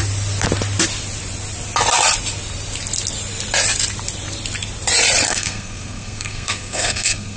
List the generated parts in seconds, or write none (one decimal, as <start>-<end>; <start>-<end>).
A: 5.3-7.4